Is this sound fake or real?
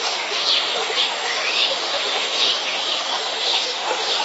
fake